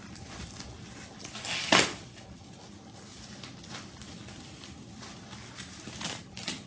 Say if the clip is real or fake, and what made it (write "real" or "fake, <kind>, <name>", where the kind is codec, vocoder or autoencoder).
real